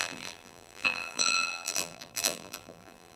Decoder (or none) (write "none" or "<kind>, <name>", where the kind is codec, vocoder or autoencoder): vocoder, BigVGAN v2